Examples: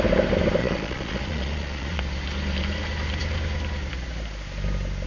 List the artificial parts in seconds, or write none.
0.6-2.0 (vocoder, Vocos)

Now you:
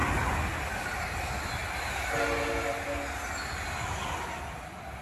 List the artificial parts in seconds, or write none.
none

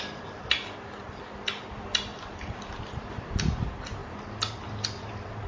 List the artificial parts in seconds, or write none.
0.0-4.0 (vocoder, BigVGAN v2); 4.5-5.5

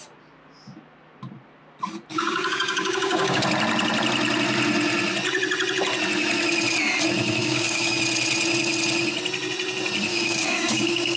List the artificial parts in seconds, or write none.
2.1-3.4 (codec, DAC); 7.4-8.0; 10.1-11.2

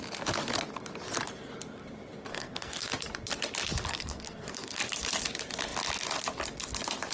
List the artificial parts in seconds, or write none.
2.3-2.9 (codec, SNAC); 3.9-4.8

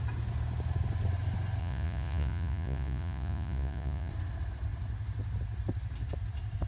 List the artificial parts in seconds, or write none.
1.6-4.1 (vocoder, Vocos)